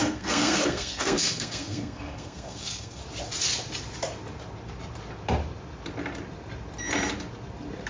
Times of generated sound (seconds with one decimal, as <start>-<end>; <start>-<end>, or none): 0.0-3.0